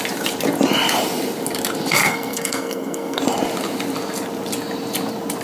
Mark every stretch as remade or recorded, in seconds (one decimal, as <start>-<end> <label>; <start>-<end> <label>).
0.0-2.0 recorded; 2.0-3.2 remade; 3.2-5.4 recorded